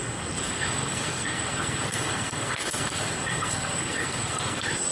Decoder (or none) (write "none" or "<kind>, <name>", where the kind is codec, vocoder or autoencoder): codec, SNAC